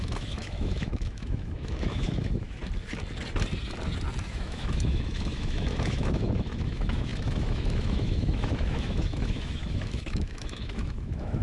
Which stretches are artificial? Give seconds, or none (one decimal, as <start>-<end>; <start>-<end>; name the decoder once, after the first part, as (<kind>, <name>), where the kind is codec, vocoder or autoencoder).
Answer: 0.0-2.6 (autoencoder, DAC-VAE); 4.2-11.4